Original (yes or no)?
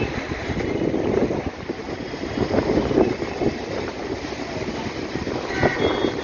yes